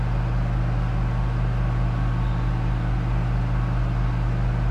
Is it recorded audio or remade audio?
recorded